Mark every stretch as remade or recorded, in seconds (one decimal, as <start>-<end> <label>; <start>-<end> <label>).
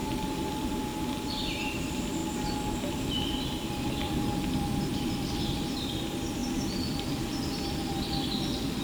0.0-0.5 recorded; 0.5-0.9 remade; 0.9-1.8 recorded; 1.8-2.2 remade; 2.2-2.8 recorded; 2.8-6.4 remade; 6.4-6.9 recorded; 6.9-8.8 remade